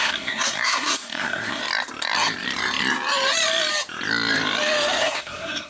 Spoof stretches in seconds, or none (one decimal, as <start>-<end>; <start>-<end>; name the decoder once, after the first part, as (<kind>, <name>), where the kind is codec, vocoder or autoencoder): 0.0-1.6 (codec, SNAC); 5.0-5.7